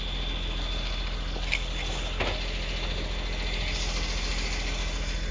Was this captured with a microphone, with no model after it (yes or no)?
yes